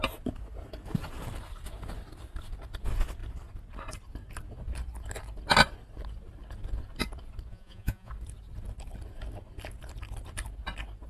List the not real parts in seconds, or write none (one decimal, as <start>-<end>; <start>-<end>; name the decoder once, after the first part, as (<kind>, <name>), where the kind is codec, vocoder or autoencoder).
7.5-8.1 (vocoder, Vocos)

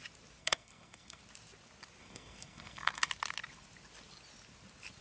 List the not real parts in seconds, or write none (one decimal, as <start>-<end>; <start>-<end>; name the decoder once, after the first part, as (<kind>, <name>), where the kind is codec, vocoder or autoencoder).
0.4-1.2 (codec, SNAC); 2.0-3.1

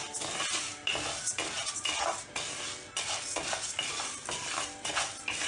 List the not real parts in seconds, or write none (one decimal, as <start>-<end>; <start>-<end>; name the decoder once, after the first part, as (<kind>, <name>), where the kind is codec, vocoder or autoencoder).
none

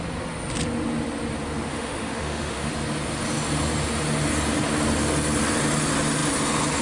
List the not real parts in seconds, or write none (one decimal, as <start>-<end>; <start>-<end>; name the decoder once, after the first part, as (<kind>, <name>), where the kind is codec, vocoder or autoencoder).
1.7-2.7 (autoencoder, DAC-VAE)

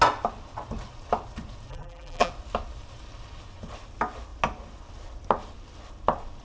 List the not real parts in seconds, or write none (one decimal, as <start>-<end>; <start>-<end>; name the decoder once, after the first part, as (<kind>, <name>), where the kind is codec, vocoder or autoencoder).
1.7-2.3 (vocoder, BigVGAN v2)

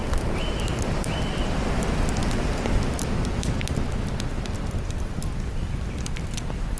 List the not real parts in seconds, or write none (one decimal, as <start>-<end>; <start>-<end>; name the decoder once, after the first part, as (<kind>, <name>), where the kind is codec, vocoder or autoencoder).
0.0-1.1 (vocoder, BigVGAN v2); 2.2-2.8